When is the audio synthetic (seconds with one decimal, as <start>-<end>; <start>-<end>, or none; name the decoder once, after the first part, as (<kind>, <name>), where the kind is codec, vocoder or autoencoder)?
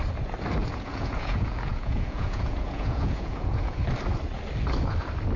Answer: 0.6-3.8 (vocoder, Vocos)